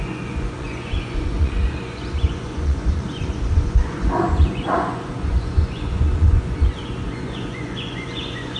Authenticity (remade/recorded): remade